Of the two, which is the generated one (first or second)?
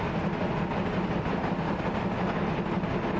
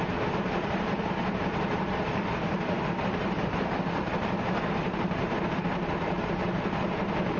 second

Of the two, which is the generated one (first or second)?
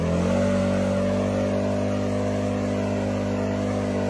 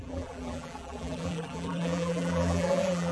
second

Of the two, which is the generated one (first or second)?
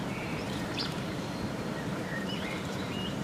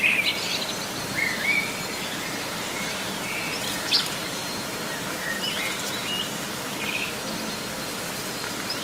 first